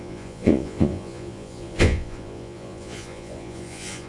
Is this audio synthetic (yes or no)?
yes